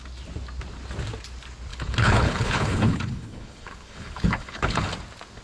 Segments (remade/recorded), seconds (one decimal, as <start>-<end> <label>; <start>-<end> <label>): 0.0-1.7 recorded; 1.7-4.9 remade; 4.9-5.4 recorded